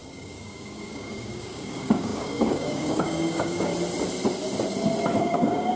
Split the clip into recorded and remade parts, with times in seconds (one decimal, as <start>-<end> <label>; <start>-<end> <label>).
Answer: 0.0-3.7 remade; 3.7-5.2 recorded; 5.2-5.8 remade